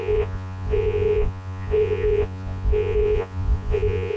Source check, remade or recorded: remade